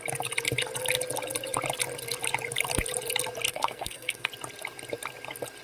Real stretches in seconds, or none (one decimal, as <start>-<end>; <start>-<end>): 0.0-3.5; 4.3-5.6